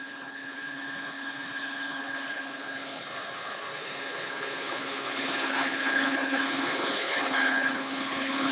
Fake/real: fake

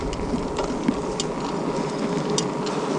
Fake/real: real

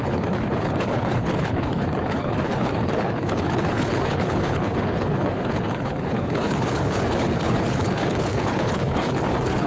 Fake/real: fake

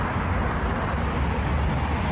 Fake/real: real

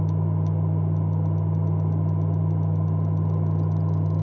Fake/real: real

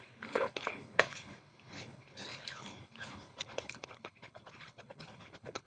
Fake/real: fake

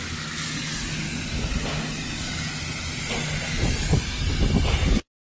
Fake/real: real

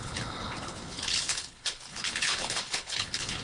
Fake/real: fake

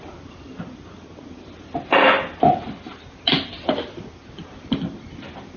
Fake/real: real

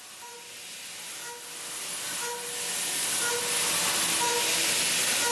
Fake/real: real